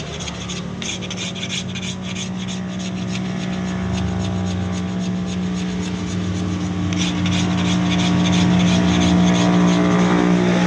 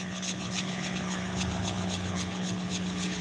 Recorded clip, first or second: first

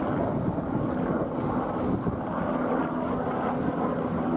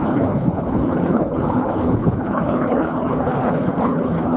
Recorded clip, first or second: first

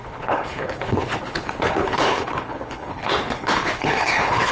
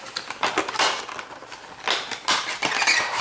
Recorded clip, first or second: second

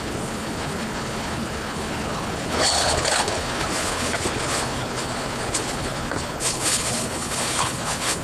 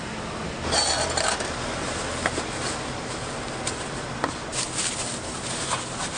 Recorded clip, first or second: second